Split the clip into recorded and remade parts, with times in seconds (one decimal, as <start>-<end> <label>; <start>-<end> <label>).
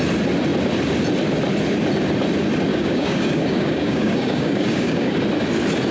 0.0-2.7 recorded; 2.7-5.2 remade; 5.2-5.9 recorded